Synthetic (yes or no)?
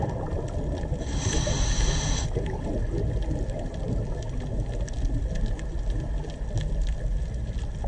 no